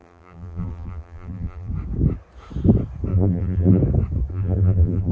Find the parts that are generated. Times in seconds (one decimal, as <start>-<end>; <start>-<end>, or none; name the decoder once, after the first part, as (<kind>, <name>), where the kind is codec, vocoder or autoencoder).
0.0-1.7 (vocoder, BigVGAN v2); 3.1-3.8; 4.3-5.1